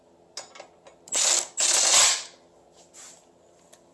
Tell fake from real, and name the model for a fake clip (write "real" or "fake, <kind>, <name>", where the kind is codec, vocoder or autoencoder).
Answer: real